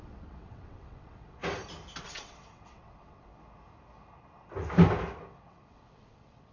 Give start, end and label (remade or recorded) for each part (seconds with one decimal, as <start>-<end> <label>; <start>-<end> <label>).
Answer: 0.0-1.4 remade; 1.4-2.0 recorded; 2.0-3.3 remade; 3.3-5.3 recorded; 5.3-6.5 remade